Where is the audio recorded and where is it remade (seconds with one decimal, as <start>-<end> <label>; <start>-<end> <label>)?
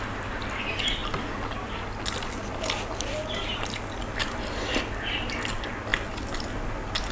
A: 0.0-7.1 recorded